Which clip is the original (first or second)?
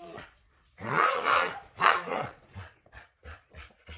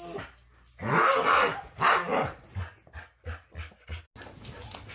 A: second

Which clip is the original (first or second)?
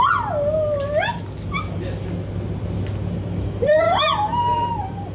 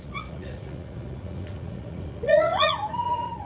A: first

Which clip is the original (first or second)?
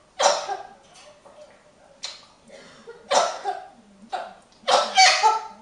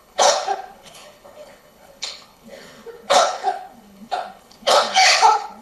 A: first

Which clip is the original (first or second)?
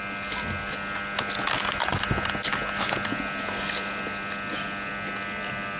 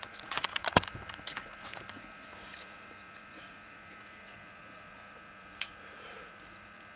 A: first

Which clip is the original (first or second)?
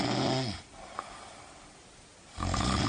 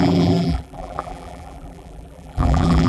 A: first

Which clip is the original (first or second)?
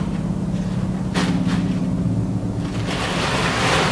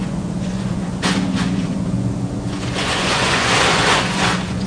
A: first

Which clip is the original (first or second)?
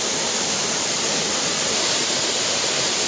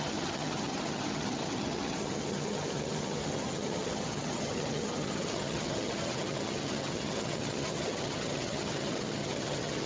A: first